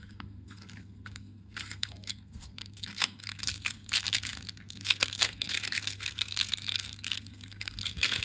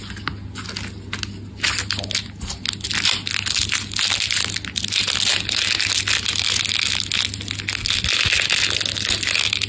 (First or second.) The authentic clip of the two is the second